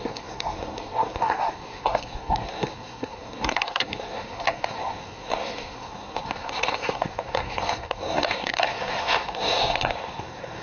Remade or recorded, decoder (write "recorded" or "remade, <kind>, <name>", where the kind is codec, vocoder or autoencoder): remade, codec, SNAC